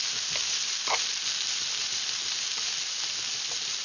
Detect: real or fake real